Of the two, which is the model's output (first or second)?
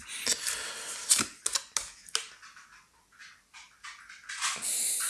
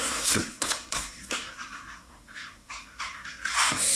second